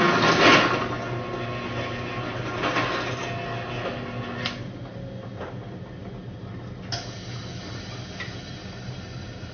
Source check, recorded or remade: recorded